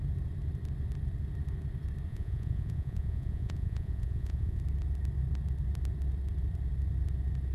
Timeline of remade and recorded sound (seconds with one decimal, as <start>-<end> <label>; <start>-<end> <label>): 0.0-2.1 recorded; 2.1-4.6 remade; 4.6-7.5 recorded